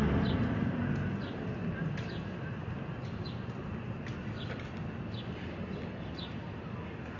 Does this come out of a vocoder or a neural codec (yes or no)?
no